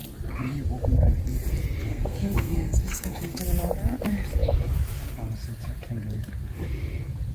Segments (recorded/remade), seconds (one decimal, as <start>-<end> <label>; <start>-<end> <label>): 0.0-1.9 recorded; 1.9-3.4 remade; 3.4-7.3 recorded